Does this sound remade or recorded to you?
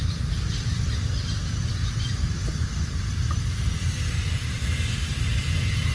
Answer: remade